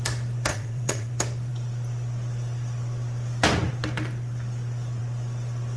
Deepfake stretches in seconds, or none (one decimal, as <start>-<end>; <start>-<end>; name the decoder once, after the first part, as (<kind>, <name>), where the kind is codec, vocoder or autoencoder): 0.5-1.1 (vocoder, WaveNeXt)